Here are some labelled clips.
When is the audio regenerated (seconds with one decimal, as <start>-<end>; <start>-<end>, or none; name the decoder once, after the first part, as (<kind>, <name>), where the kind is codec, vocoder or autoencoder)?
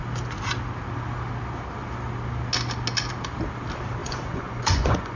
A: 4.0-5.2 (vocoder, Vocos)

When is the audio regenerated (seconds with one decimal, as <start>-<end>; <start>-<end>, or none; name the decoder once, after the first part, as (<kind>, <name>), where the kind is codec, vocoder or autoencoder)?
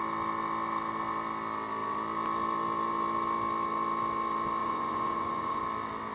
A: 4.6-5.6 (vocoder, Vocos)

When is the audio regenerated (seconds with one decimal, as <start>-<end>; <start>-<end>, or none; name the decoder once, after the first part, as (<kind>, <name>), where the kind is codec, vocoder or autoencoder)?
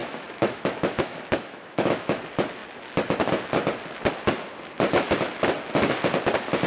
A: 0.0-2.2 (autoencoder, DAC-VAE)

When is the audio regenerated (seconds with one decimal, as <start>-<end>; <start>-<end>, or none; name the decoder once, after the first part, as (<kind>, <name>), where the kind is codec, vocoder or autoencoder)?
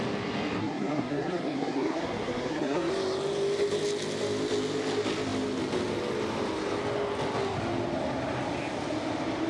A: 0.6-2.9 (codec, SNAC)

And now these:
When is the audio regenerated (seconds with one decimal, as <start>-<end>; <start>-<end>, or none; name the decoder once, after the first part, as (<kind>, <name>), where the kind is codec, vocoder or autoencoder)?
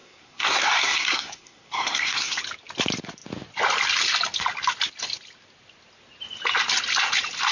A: 0.0-2.4 (codec, SNAC)